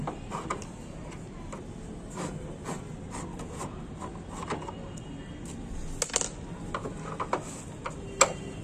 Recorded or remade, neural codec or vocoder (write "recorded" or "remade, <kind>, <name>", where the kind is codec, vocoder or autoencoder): recorded